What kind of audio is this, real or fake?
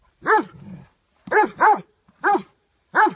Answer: fake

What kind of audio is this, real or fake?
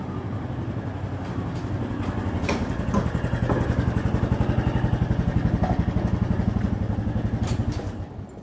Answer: real